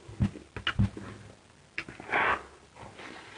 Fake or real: real